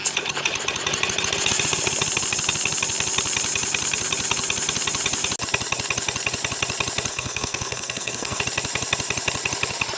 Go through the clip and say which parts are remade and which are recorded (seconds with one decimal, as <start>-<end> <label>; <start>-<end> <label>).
0.0-7.1 recorded; 7.1-8.4 remade; 8.4-10.0 recorded